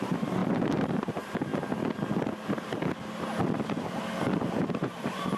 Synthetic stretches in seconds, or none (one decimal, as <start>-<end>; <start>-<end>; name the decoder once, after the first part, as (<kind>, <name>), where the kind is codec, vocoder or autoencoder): 0.0-1.5 (vocoder, BigVGAN v2); 4.7-5.4